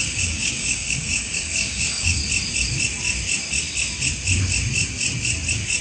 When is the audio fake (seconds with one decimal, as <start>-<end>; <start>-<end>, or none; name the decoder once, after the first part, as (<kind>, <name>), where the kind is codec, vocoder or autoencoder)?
0.0-2.2 (codec, DAC)